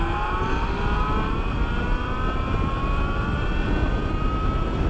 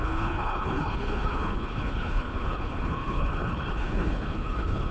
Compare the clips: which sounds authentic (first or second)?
first